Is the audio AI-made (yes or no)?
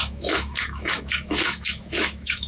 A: yes